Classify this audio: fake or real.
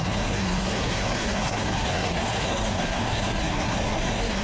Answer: fake